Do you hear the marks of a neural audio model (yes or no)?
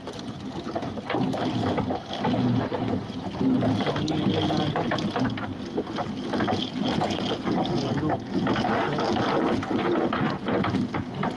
no